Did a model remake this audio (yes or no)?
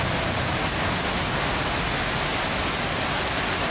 no